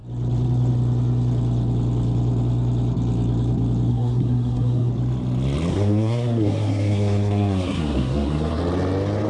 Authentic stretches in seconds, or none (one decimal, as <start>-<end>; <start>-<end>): 0.0-3.9; 4.9-5.7; 8.6-9.3